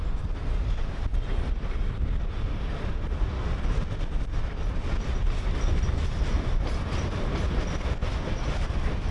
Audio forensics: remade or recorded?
recorded